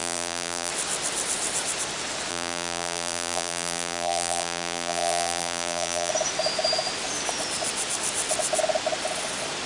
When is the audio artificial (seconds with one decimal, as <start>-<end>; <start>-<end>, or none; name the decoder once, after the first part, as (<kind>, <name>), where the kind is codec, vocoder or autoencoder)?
0.0-0.7 (vocoder, BigVGAN v2); 2.3-6.1